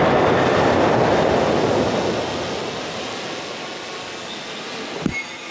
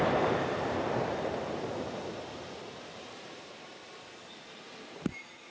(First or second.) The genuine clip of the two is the first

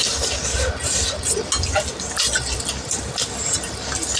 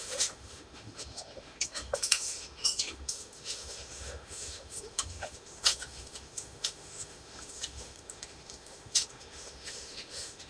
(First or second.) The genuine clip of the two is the first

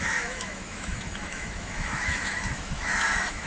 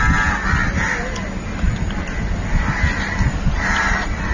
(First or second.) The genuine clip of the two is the second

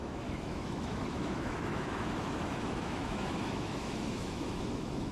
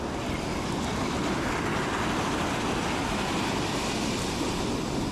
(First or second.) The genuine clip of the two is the second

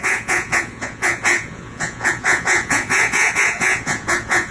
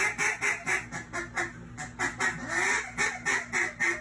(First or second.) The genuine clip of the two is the second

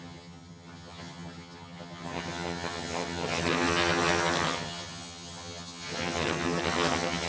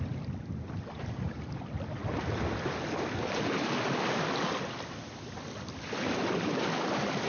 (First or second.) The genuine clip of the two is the second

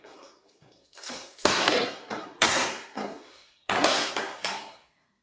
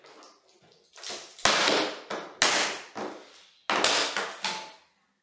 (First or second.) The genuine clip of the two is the second